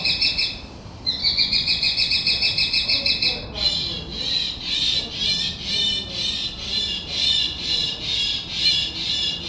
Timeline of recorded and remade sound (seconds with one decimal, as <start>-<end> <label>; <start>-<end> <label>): 0.0-1.2 recorded; 1.2-2.1 remade; 2.1-7.2 recorded; 7.2-8.0 remade; 8.0-9.5 recorded